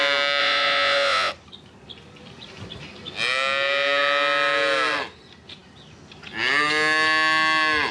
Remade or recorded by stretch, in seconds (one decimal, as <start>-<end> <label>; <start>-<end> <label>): 0.0-0.4 recorded; 0.4-1.3 remade; 1.3-7.9 recorded